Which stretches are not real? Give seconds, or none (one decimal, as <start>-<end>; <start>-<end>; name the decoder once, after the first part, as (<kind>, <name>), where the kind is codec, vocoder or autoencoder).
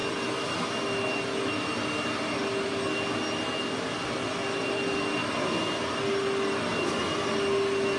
none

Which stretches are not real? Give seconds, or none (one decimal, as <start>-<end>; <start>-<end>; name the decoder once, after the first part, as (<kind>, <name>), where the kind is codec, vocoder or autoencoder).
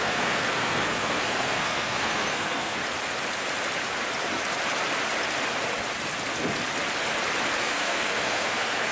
0.0-2.8 (codec, SNAC); 7.6-8.9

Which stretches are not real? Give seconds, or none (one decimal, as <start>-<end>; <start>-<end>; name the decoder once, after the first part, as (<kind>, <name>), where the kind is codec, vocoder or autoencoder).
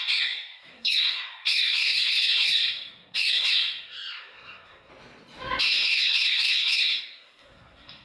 0.0-4.9 (codec, SNAC); 5.6-8.0